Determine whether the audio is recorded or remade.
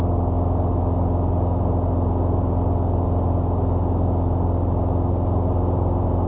recorded